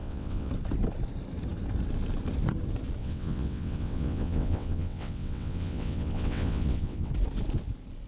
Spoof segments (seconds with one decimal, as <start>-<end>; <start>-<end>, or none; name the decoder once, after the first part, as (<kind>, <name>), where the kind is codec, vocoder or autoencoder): 0.0-0.5 (vocoder, WaveNeXt); 3.0-7.1